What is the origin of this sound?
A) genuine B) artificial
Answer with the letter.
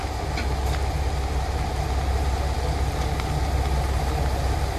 A